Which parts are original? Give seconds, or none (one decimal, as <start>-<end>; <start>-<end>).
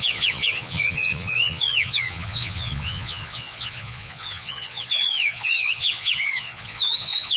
none